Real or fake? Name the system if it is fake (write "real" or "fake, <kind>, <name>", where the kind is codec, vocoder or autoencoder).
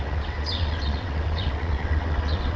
fake, vocoder, WaveNeXt